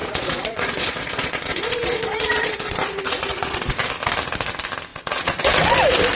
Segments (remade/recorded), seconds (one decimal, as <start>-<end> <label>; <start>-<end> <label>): 0.0-3.7 remade; 3.7-4.9 recorded; 4.9-5.6 remade; 5.6-6.1 recorded